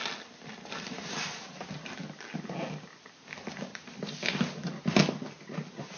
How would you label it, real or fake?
real